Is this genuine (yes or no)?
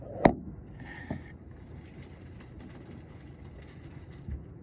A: yes